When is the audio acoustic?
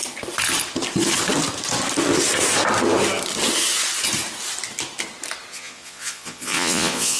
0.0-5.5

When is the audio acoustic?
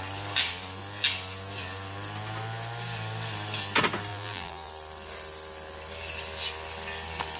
0.0-4.1; 4.7-7.4